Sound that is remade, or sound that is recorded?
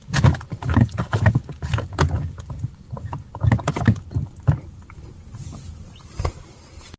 recorded